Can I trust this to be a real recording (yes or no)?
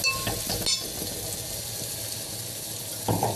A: yes